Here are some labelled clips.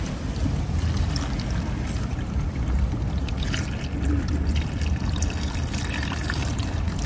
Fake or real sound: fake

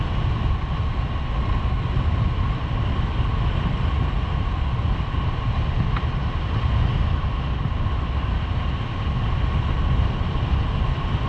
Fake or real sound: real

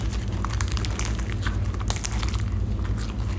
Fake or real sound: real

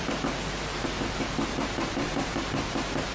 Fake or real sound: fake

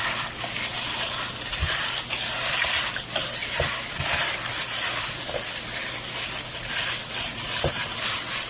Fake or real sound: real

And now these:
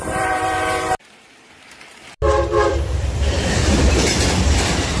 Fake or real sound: fake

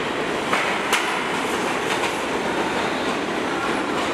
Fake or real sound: fake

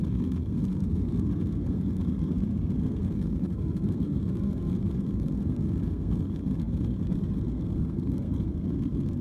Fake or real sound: fake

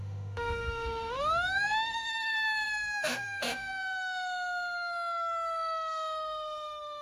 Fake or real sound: fake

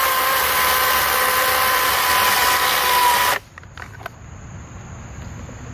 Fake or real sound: real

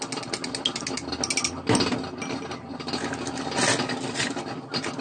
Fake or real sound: real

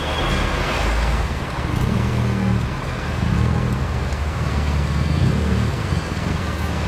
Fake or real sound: fake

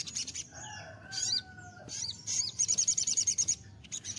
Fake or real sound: fake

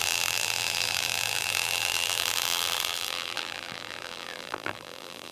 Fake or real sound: fake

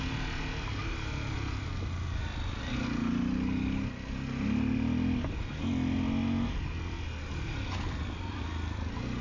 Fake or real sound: real